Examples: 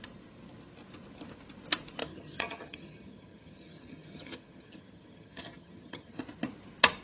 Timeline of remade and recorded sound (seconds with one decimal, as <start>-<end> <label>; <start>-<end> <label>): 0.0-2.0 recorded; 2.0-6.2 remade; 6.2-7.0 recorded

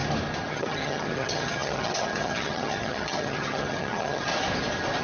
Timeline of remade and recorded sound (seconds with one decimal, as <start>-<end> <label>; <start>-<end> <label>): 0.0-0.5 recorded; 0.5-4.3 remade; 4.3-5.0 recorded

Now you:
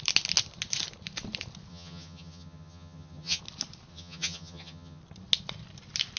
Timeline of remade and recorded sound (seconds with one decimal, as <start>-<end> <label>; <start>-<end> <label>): 0.0-1.7 recorded; 1.7-3.4 remade; 3.4-3.9 recorded; 3.9-5.0 remade; 5.0-6.2 recorded

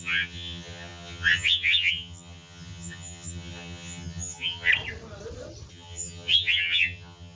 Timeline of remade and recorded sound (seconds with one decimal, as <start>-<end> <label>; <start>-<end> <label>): 0.0-4.7 remade; 4.7-5.7 recorded; 5.7-7.3 remade

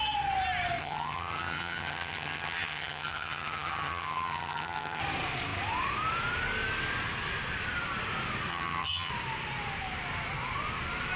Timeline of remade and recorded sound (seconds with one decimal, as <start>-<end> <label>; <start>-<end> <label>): 0.0-0.8 recorded; 0.8-5.0 remade; 5.0-8.5 recorded; 8.5-9.1 remade; 9.1-11.2 recorded